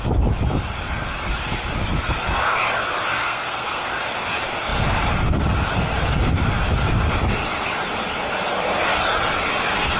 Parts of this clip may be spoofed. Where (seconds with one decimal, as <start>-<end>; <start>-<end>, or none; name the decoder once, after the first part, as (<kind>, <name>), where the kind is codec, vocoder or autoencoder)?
3.2-3.9 (codec, SNAC)